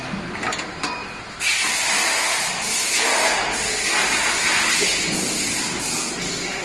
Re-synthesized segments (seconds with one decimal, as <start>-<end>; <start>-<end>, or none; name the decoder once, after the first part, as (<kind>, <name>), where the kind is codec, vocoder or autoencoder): none